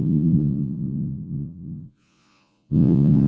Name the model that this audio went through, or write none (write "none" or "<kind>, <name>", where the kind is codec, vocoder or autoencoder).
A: vocoder, Vocos